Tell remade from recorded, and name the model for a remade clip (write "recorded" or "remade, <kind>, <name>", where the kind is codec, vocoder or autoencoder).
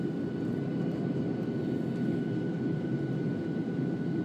recorded